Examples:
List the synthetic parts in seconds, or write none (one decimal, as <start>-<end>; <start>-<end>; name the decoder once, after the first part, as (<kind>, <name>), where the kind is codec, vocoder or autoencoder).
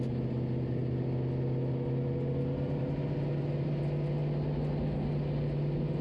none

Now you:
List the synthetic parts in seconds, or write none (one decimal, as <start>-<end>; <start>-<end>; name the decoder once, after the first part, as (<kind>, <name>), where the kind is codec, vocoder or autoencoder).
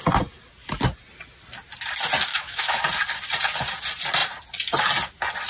2.3-2.8 (autoencoder, DAC-VAE)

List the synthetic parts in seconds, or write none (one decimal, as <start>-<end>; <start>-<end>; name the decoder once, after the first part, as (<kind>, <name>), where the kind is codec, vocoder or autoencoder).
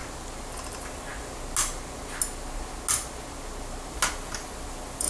0.7-1.1 (vocoder, BigVGAN v2); 4.1-5.1